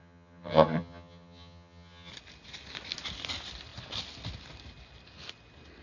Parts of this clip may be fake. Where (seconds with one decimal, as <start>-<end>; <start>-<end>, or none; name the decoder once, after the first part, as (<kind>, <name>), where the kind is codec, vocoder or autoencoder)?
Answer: 0.0-2.1 (vocoder, HiFi-GAN)